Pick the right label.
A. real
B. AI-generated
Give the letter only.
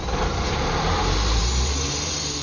B